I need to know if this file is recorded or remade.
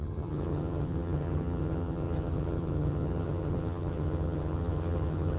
remade